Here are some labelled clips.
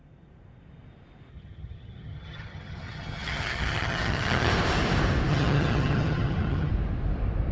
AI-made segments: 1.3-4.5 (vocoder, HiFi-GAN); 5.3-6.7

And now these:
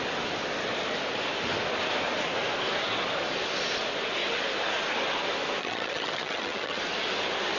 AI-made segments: 5.6-6.8 (vocoder, HiFi-GAN)

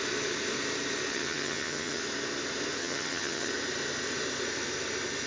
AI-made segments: 1.1-2.0 (vocoder, HiFi-GAN); 2.8-3.5

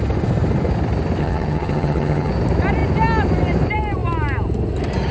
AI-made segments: 1.2-2.3 (vocoder, HiFi-GAN)

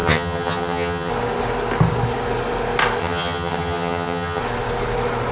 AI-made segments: 0.0-1.1 (vocoder, HiFi-GAN); 3.0-4.4